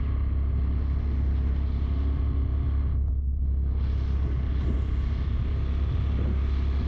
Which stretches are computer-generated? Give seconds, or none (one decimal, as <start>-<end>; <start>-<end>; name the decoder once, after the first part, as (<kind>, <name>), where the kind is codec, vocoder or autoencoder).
none